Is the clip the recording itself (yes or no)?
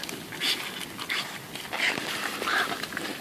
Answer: yes